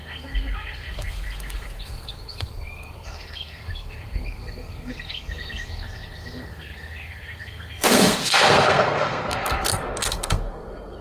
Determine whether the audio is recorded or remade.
remade